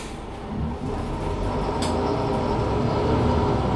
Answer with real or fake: real